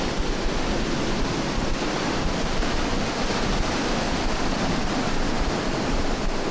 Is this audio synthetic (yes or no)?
yes